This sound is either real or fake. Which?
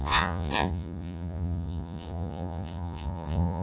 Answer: fake